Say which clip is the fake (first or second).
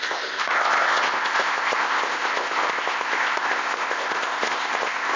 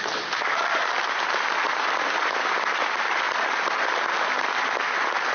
first